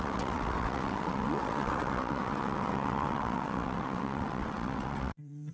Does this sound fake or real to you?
fake